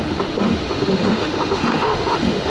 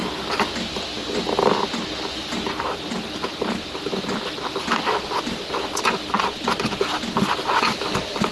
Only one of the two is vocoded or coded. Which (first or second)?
first